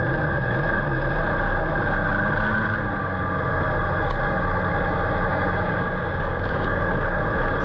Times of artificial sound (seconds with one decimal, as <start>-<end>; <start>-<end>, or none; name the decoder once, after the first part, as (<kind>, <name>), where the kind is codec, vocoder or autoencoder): 5.3-6.9 (codec, DAC)

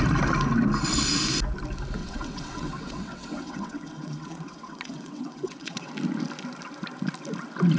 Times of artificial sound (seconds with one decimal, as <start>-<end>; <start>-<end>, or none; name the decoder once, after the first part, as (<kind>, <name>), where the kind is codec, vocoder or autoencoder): 2.0-5.9 (vocoder, WaveNeXt)

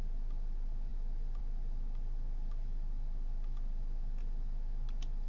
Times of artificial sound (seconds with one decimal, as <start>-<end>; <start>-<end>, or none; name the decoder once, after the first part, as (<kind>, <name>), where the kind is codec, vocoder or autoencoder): none

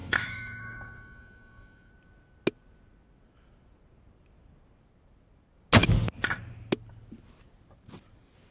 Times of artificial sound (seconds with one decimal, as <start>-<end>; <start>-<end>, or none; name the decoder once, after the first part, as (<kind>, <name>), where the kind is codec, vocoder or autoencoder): 0.0-1.9 (autoencoder, DAC-VAE)